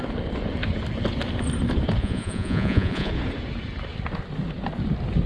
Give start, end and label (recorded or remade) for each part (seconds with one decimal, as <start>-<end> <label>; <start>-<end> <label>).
0.0-2.0 recorded; 2.0-3.1 remade; 3.1-5.3 recorded